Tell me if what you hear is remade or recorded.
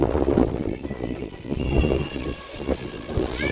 remade